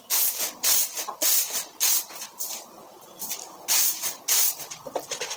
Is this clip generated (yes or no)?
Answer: no